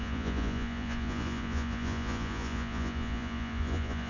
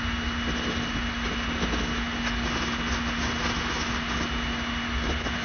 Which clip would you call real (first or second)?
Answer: second